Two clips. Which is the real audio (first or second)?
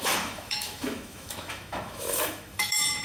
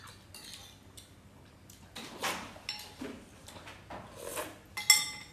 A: second